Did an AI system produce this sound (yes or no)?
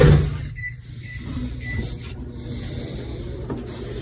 no